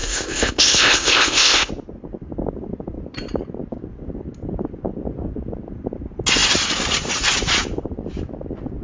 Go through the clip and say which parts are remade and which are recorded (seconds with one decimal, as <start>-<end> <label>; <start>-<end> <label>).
0.0-1.7 remade; 1.7-8.8 recorded

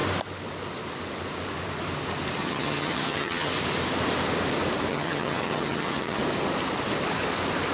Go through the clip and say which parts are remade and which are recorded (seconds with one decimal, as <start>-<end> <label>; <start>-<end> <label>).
0.0-2.4 recorded; 2.4-3.5 remade; 3.5-4.9 recorded; 4.9-6.2 remade; 6.2-7.7 recorded

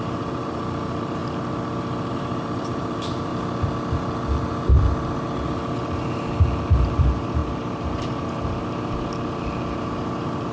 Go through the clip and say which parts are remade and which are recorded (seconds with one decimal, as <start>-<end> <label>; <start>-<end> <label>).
0.0-1.2 remade; 1.2-2.1 recorded; 2.1-3.3 remade; 3.3-7.0 recorded; 7.0-10.5 remade